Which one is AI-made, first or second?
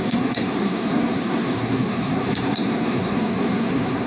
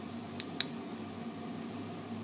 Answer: first